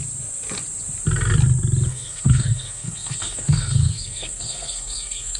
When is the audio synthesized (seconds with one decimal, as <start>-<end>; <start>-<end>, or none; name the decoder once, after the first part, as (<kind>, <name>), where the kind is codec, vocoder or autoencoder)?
1.9-5.4 (codec, SNAC)